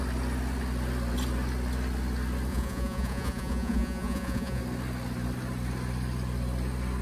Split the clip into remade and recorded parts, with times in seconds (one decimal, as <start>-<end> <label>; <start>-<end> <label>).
0.0-2.5 recorded; 2.5-4.6 remade; 4.6-7.0 recorded